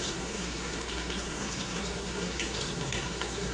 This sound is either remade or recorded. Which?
remade